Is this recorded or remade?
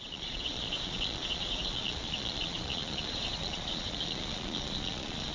remade